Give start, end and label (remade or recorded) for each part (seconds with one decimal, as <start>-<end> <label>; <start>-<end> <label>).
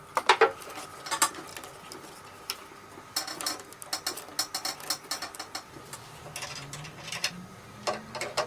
0.0-8.5 recorded